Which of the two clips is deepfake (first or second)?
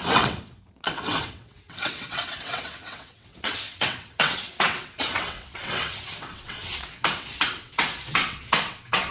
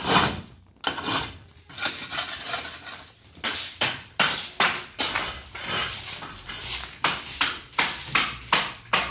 first